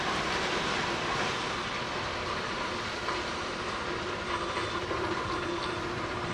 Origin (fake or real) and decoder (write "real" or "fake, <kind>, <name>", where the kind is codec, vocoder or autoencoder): fake, vocoder, BigVGAN v2